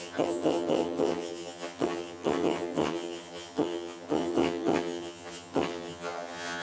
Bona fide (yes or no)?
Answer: no